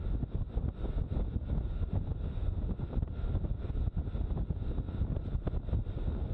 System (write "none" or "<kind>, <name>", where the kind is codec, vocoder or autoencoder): vocoder, BigVGAN v2